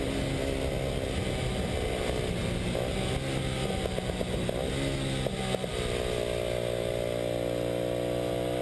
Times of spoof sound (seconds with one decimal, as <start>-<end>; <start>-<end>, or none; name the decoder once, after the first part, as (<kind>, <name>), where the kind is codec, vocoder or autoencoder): none

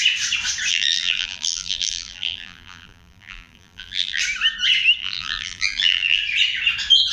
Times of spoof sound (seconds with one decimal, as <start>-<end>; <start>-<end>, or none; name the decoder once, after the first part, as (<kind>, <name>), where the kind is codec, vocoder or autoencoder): 0.7-4.2 (vocoder, BigVGAN v2); 5.0-6.2

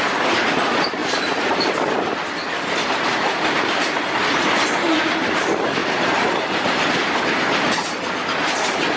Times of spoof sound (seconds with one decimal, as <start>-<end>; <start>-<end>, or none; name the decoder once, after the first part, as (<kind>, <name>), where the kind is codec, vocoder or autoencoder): 1.0-2.9 (vocoder, BigVGAN v2); 5.8-7.2

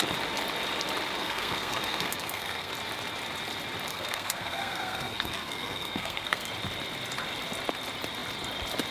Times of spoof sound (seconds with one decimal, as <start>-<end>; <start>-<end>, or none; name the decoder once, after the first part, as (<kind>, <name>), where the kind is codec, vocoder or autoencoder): 1.2-2.7 (codec, SNAC); 3.9-6.5

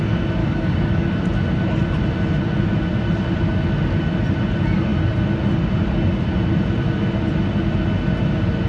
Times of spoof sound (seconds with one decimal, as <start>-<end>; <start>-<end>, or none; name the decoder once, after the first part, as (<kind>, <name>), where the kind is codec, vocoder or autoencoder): 0.4-1.1 (codec, DAC)

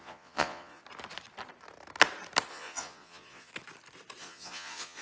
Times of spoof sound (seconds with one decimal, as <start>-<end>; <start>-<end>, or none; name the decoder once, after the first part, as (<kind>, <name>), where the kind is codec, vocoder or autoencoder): 0.0-0.8 (vocoder, Vocos); 2.5-3.5; 4.2-5.0